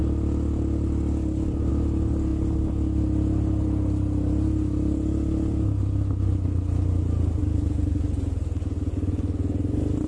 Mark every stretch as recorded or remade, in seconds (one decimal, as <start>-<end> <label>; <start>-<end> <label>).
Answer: 0.0-10.1 recorded